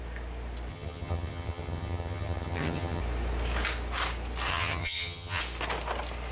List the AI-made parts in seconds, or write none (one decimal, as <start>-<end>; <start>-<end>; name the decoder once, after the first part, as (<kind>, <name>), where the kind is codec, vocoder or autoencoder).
0.7-3.0 (vocoder, HiFi-GAN); 4.5-5.4